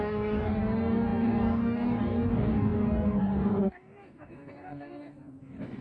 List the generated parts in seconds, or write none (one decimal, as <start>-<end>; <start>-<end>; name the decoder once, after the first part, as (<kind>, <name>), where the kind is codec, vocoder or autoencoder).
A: 0.0-5.8 (codec, DAC)

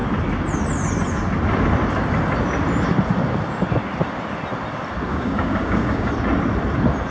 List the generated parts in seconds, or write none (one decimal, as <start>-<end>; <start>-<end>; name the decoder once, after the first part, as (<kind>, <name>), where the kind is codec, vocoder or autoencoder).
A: 5.1-6.1 (codec, DAC)

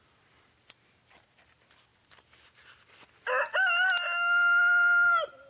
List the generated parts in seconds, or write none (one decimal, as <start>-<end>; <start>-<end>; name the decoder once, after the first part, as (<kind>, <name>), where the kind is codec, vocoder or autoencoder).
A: none

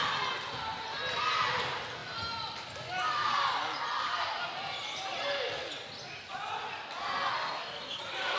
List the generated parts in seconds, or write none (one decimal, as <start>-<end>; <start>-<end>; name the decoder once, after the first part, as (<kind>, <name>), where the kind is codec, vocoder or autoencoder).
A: 7.3-8.0 (codec, DAC)

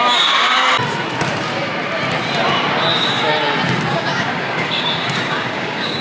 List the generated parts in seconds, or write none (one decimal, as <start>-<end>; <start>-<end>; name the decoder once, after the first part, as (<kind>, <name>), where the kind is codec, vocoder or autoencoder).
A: 0.0-0.7 (codec, DAC); 2.9-3.3; 3.9-6.0

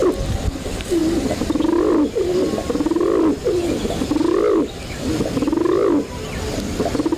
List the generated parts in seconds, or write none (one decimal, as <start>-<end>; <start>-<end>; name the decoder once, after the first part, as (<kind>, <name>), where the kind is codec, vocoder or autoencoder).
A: none

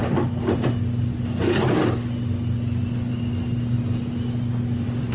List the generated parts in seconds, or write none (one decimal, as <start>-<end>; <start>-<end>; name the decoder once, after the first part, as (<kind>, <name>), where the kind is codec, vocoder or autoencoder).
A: none